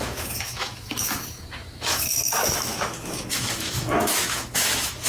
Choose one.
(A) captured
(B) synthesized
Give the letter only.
B